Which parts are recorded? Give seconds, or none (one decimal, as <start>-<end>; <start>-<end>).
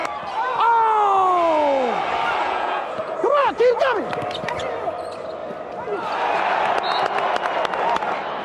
0.0-2.4; 3.0-3.4; 4.0-8.4